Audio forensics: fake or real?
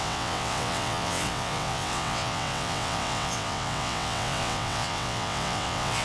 fake